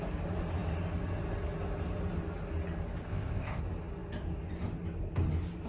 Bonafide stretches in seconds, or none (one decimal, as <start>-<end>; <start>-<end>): 0.0-3.1; 3.6-5.7